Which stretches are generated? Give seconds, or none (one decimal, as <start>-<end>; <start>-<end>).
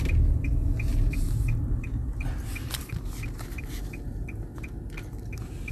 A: none